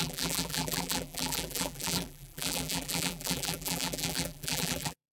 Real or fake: fake